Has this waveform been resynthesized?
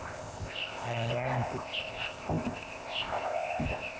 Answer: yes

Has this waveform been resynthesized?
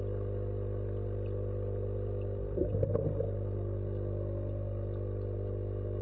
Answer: no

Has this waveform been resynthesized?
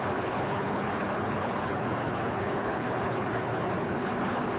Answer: yes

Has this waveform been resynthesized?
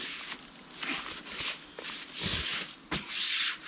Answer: no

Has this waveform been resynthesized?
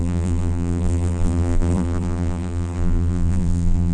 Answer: yes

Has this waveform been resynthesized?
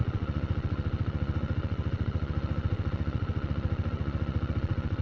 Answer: yes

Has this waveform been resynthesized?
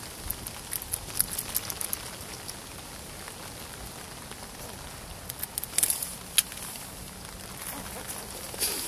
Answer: no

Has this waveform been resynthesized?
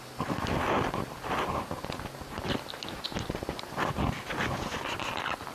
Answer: no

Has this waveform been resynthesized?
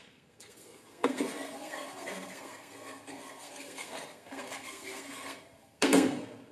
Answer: yes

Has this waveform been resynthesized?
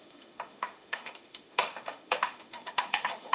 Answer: yes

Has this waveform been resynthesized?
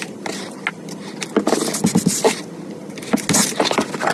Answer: no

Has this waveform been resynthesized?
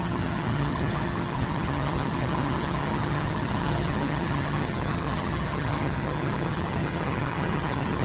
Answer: yes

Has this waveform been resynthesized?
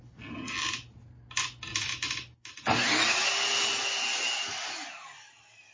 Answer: no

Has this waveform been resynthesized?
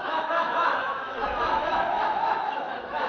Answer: yes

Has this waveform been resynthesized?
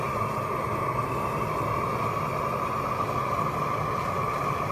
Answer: no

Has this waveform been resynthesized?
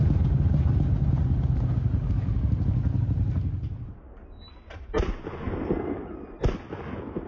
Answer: no